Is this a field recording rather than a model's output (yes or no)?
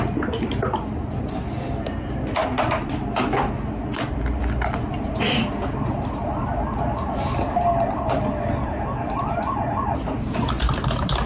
yes